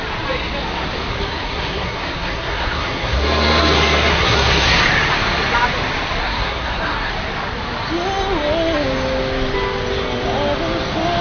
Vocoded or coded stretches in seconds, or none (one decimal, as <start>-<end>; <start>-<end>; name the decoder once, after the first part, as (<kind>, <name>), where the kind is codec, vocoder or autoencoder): 1.1-4.8 (codec, SNAC); 6.2-7.1